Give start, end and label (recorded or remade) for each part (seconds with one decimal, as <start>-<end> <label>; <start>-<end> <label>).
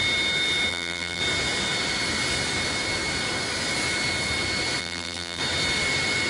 0.0-0.7 recorded; 0.7-1.2 remade; 1.2-4.8 recorded; 4.8-5.4 remade; 5.4-6.3 recorded